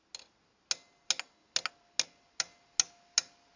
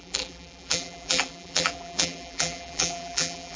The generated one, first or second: second